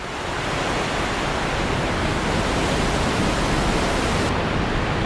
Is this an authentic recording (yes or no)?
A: yes